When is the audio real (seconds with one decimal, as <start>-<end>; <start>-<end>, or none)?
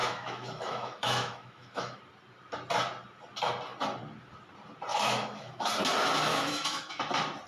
2.0-4.9; 5.7-6.3; 7.0-7.5